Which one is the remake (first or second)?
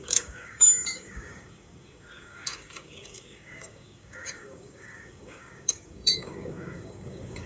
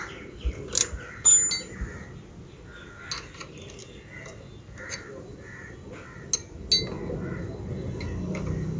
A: first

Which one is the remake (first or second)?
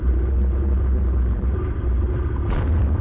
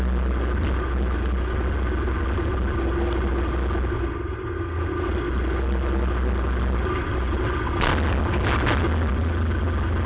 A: first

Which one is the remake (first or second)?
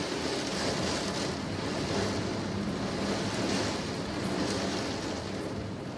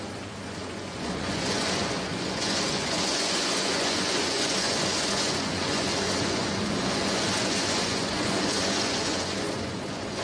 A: second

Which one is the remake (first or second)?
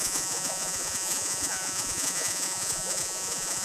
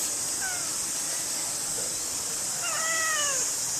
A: first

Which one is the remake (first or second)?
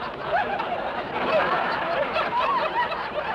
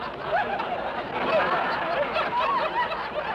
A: first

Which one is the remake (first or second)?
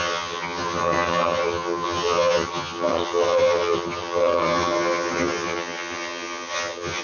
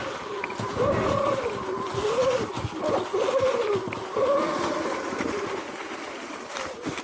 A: first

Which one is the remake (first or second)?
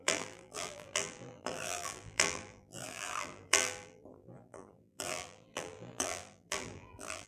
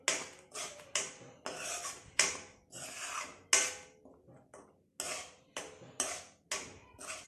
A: first